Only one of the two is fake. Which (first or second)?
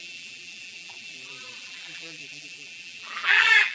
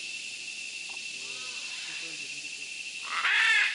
first